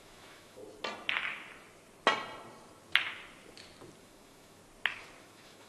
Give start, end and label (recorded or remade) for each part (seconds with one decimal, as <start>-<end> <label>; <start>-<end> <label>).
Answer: 0.0-0.6 remade; 0.6-4.0 recorded; 4.0-4.6 remade; 4.6-5.2 recorded; 5.2-5.7 remade